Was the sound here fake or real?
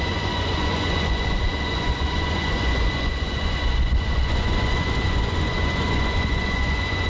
fake